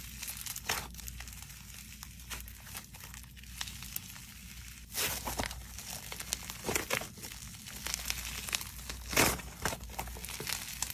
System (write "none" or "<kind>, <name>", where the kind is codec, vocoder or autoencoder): none